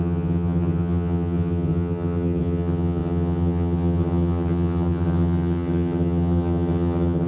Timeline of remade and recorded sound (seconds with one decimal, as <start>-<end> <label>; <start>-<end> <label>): 0.0-7.3 remade